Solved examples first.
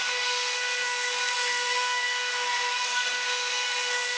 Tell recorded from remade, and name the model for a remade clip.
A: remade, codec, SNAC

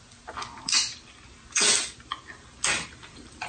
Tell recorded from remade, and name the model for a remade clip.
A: recorded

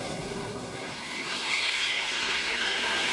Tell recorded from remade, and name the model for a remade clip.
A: remade, codec, SNAC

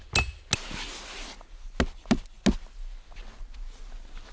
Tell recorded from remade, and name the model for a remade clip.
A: recorded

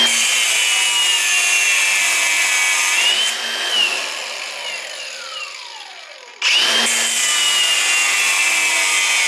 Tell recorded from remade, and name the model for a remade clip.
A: recorded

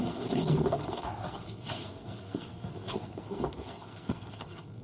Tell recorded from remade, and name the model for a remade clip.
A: remade, codec, SNAC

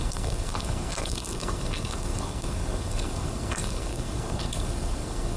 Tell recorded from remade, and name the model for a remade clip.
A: remade, codec, SNAC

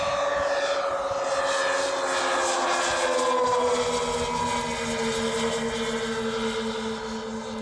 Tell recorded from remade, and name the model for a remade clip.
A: recorded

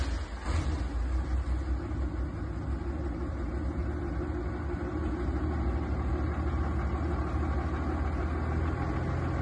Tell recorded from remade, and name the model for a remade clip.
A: recorded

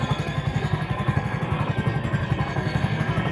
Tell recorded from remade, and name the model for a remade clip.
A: remade, codec, SNAC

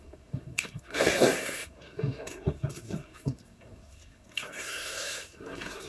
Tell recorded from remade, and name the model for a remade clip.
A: remade, codec, SNAC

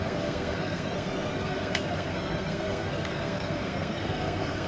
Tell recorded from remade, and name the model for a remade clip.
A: remade, codec, SNAC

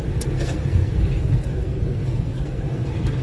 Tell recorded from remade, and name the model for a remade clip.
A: remade, codec, SNAC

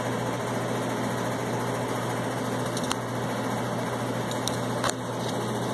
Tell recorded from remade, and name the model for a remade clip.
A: recorded